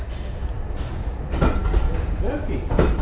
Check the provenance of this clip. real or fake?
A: real